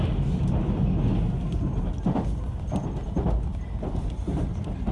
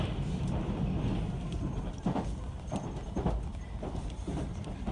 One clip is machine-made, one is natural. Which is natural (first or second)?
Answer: first